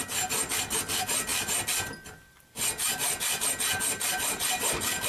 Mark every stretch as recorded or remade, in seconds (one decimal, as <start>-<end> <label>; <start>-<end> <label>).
0.0-1.3 remade; 1.3-4.1 recorded; 4.1-5.1 remade